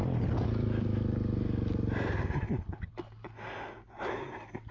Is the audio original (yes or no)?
yes